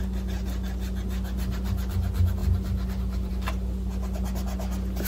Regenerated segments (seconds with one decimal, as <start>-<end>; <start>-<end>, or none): none